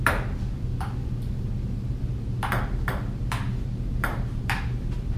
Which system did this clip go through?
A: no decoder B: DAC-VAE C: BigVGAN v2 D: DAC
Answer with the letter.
A